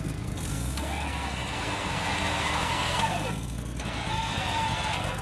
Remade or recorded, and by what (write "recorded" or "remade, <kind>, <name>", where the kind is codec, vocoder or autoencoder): remade, codec, SNAC